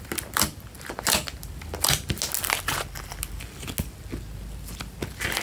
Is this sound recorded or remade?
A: recorded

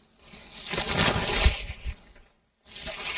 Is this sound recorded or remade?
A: recorded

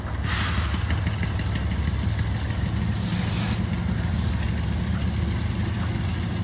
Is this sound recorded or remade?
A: recorded